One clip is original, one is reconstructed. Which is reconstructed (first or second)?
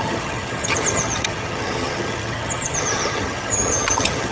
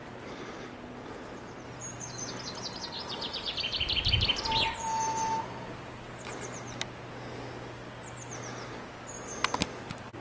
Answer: first